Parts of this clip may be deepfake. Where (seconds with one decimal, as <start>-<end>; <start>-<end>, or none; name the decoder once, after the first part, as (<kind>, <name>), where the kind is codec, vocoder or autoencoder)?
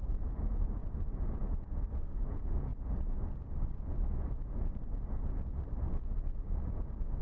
0.0-7.2 (vocoder, Vocos)